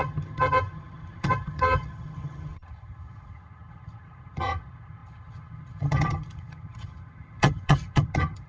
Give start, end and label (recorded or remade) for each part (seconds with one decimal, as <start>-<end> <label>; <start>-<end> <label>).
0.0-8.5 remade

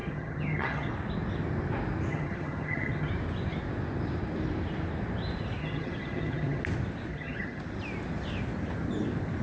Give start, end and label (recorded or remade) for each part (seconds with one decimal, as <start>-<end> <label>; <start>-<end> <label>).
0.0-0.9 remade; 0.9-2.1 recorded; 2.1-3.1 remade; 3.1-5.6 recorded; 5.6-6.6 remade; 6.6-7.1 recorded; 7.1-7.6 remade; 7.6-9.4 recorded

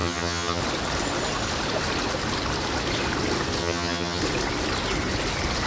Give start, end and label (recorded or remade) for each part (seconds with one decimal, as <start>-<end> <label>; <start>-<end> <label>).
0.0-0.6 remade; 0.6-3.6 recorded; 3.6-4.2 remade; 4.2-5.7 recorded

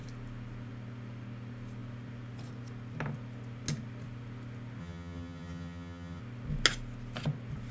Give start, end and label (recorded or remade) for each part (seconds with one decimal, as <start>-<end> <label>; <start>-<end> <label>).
0.0-4.8 recorded; 4.8-6.2 remade; 6.2-7.7 recorded

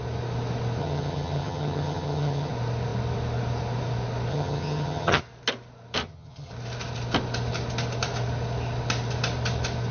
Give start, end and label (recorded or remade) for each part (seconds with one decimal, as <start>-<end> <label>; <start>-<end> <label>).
0.0-0.8 recorded; 0.8-2.5 remade; 2.5-4.3 recorded; 4.3-5.2 remade; 5.2-6.0 recorded; 6.0-6.5 remade; 6.5-9.9 recorded

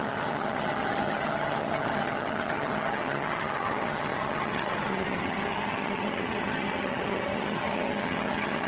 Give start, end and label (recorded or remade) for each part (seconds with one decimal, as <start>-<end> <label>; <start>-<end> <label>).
0.0-8.7 remade

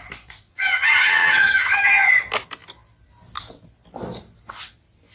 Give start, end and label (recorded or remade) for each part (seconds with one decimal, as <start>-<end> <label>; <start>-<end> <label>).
0.0-0.5 recorded; 0.5-2.1 remade; 2.1-5.1 recorded

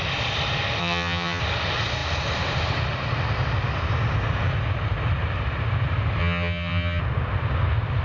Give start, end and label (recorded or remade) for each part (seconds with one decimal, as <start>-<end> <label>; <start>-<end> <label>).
0.0-0.8 recorded; 0.8-1.4 remade; 1.4-6.2 recorded; 6.2-7.0 remade; 7.0-8.0 recorded